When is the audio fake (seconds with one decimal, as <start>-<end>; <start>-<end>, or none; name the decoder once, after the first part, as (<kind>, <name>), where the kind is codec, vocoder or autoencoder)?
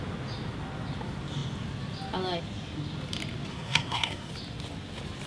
3.5-4.3 (codec, SNAC)